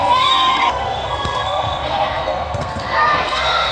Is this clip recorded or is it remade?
remade